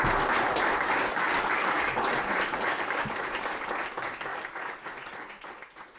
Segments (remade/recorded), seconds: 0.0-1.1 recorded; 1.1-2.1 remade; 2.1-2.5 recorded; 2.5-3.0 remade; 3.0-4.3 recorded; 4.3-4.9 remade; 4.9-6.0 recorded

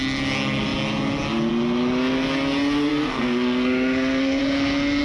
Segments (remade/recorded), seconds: 0.0-2.9 recorded; 2.9-4.4 remade; 4.4-5.0 recorded

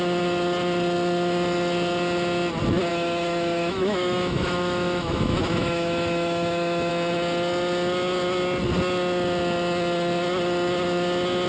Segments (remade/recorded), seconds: 0.0-2.9 recorded; 2.9-6.9 remade; 6.9-11.5 recorded

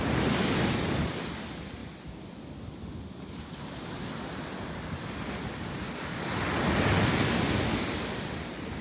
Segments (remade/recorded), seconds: 0.0-8.8 recorded

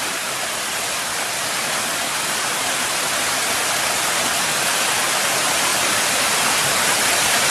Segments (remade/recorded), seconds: 0.0-7.5 recorded

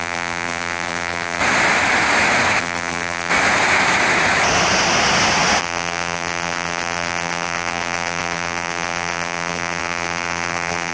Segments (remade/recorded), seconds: 0.0-1.4 remade; 1.4-2.6 recorded; 2.6-3.3 remade; 3.3-5.6 recorded; 5.6-10.9 remade

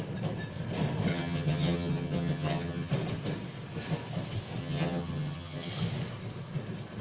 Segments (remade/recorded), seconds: 0.0-1.1 recorded; 1.1-2.9 remade; 2.9-4.6 recorded; 4.6-5.7 remade; 5.7-7.0 recorded

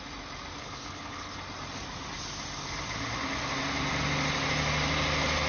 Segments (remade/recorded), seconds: 0.0-0.6 recorded; 0.6-1.4 remade; 1.4-5.5 recorded